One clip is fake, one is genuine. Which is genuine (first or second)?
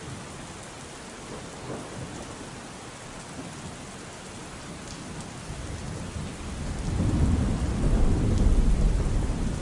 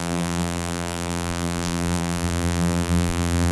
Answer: first